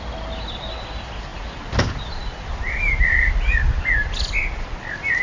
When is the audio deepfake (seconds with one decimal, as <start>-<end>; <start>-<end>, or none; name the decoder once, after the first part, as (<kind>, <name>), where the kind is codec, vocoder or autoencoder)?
none